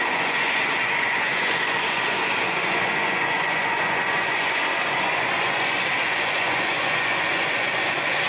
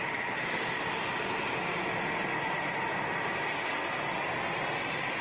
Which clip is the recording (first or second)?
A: second